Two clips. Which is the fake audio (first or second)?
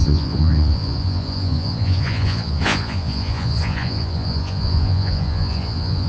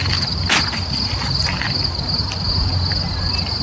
first